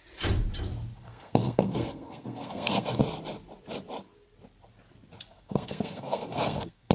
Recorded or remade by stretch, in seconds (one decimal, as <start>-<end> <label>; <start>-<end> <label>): 0.0-1.0 recorded; 1.0-3.0 remade; 3.0-5.3 recorded; 5.3-6.9 remade